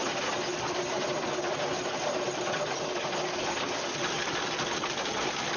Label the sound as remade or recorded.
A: recorded